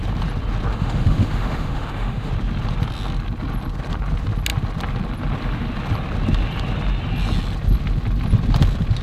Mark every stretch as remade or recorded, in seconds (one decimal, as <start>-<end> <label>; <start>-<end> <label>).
0.0-0.7 recorded; 0.7-2.3 remade; 2.3-9.0 recorded